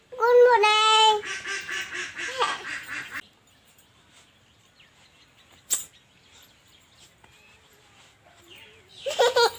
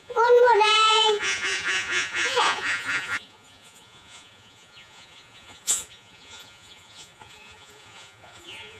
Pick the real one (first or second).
first